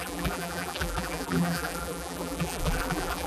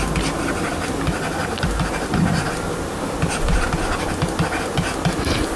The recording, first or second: second